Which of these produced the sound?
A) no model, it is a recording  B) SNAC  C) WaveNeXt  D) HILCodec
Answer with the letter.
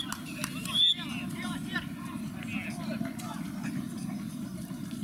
A